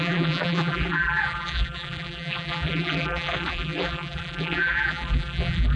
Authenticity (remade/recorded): remade